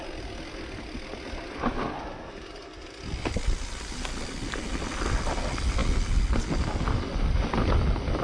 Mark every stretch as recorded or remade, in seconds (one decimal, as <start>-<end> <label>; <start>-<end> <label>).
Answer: 0.0-8.2 recorded